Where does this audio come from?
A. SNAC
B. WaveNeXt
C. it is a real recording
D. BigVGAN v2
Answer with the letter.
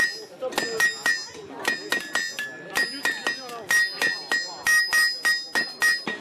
C